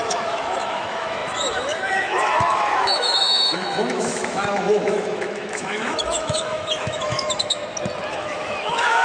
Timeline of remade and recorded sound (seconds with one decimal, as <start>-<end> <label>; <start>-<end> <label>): 0.0-7.6 remade; 7.6-8.1 recorded; 8.1-9.0 remade